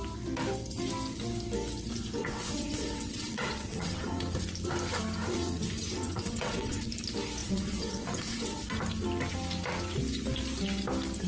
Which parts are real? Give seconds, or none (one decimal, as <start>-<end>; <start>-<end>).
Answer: 0.0-2.2; 4.2-5.3; 6.9-7.4; 8.6-11.3

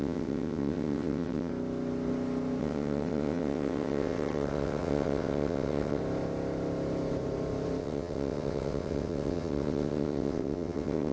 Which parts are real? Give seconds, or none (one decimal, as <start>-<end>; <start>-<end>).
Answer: 1.5-2.6; 6.0-7.8

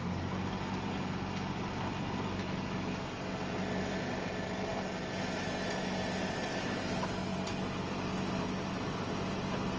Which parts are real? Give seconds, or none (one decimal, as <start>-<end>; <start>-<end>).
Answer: 0.0-9.8

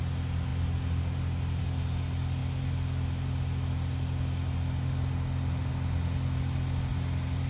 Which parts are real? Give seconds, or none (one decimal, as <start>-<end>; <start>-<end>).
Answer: 0.0-7.5

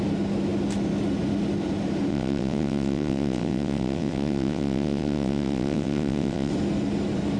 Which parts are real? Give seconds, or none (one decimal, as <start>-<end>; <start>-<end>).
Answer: 0.0-2.1; 6.5-7.4

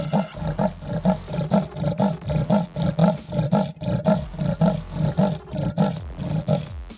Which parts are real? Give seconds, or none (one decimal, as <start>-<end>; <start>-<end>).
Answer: 0.0-7.0